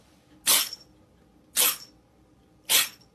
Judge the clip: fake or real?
real